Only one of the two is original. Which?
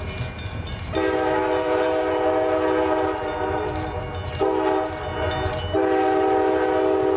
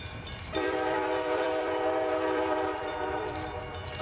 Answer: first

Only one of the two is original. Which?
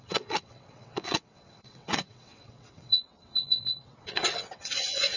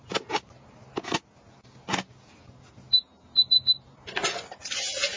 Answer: second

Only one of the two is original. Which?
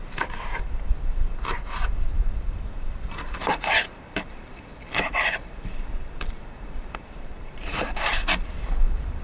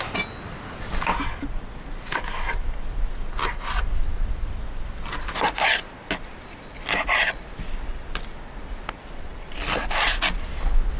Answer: second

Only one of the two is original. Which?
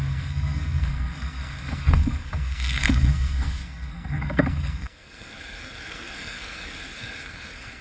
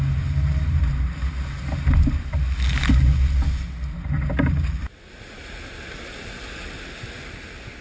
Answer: second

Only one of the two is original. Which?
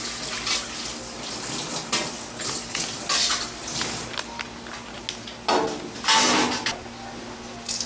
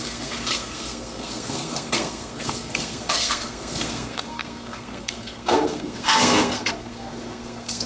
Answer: first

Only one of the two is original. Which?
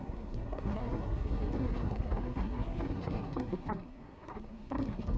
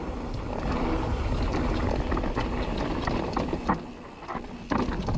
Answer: second